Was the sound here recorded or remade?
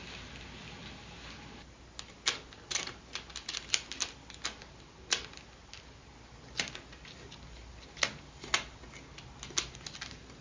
recorded